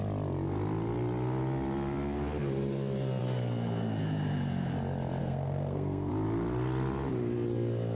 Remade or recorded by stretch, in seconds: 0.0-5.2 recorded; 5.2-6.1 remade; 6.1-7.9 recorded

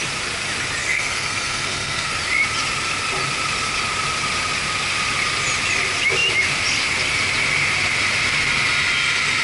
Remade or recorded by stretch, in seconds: 0.0-0.8 recorded; 0.8-2.1 remade; 2.1-9.4 recorded

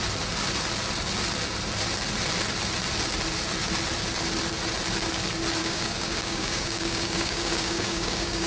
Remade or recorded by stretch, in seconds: 0.0-5.6 recorded; 5.6-8.5 remade

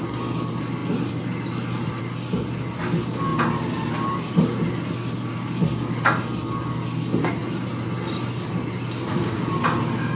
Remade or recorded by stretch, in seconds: 0.0-10.2 recorded

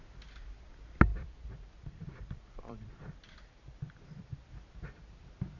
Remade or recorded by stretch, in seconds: 0.0-1.1 recorded; 1.1-4.5 remade; 4.5-5.6 recorded